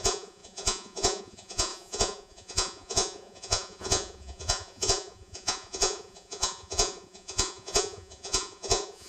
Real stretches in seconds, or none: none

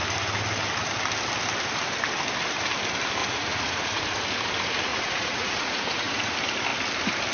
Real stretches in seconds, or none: 0.0-3.2; 4.0-4.9; 6.3-7.3

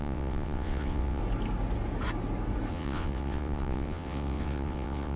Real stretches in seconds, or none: 1.2-2.7

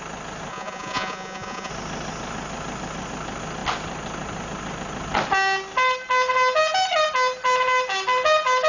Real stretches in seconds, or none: 0.0-0.5; 1.7-8.7

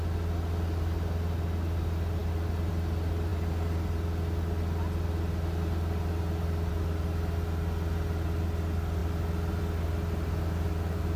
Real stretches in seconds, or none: 0.0-11.2

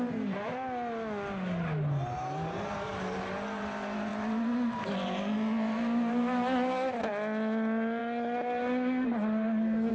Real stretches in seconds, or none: 0.0-9.9

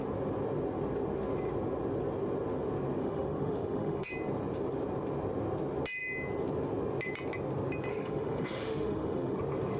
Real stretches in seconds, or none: 0.0-3.0; 4.1-7.9; 9.4-9.8

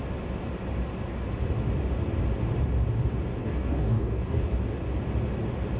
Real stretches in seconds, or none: 0.0-3.4; 4.5-5.8